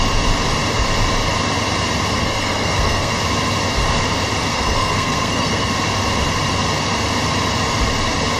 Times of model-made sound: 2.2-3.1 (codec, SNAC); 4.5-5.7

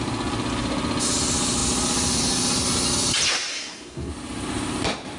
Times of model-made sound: 3.5-4.1 (codec, SNAC)

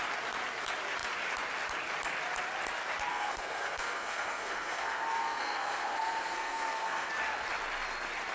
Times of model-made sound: 3.1-7.1 (codec, SNAC)

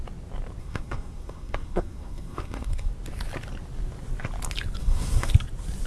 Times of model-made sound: 0.6-2.9 (codec, SNAC); 4.8-5.3

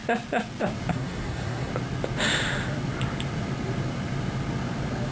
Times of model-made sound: 0.9-1.7 (codec, SNAC)

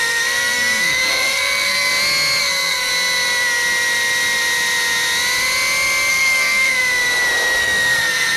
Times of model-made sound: 0.0-1.9 (codec, SNAC); 2.4-2.9; 6.1-6.8; 7.6-8.4